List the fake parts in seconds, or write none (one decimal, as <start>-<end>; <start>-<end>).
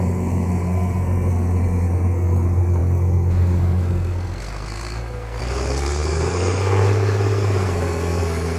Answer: 0.0-8.6